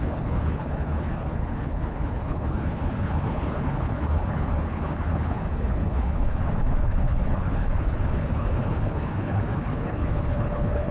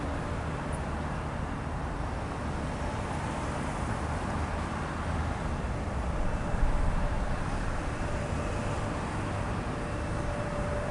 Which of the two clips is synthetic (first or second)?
first